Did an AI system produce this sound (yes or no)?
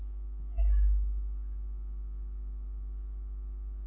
no